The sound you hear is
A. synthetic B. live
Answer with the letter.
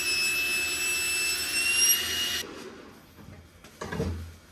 B